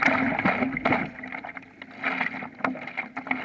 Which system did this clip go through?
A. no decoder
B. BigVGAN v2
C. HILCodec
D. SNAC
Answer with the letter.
A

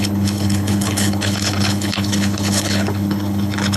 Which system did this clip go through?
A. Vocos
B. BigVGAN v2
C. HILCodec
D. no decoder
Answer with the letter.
C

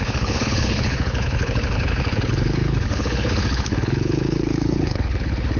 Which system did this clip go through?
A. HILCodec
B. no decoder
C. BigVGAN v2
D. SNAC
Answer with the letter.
A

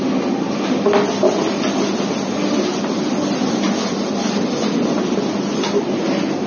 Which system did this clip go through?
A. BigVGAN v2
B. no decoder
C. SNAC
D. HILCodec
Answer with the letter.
B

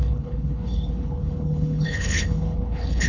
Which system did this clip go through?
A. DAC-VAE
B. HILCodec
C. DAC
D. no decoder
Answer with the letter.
B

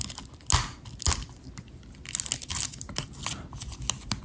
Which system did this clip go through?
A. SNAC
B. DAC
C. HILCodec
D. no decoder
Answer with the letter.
D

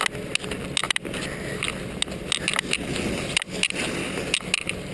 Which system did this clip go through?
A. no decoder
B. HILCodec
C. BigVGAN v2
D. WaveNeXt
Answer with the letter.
A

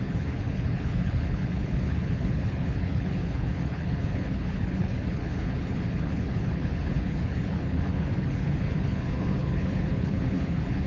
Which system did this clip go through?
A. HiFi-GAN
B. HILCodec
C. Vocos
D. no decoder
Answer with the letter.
B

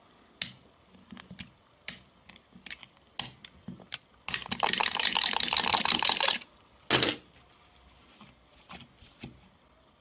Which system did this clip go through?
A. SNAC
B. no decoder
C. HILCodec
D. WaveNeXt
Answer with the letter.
B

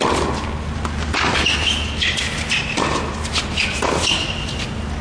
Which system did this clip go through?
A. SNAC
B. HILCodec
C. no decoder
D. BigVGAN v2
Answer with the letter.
C